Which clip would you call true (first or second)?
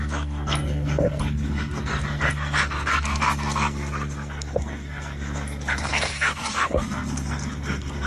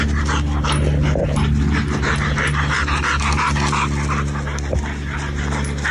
second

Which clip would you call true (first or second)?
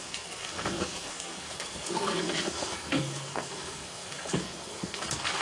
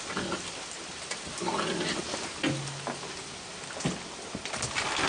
second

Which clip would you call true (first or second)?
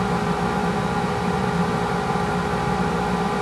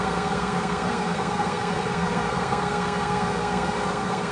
first